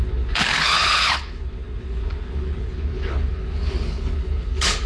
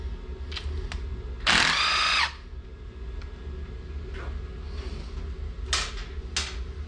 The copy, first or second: first